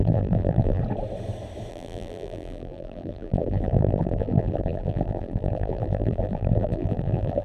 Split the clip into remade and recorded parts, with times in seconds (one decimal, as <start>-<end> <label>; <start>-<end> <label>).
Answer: 0.0-0.8 remade; 0.8-1.7 recorded; 1.7-7.4 remade